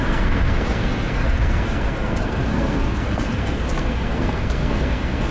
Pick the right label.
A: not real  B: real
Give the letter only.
A